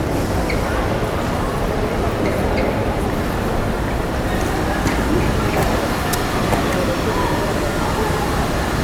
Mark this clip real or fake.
fake